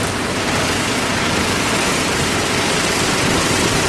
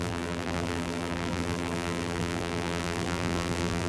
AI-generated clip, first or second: second